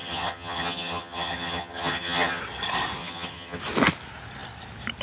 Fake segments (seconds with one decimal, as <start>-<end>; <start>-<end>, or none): 0.0-2.4; 3.0-3.6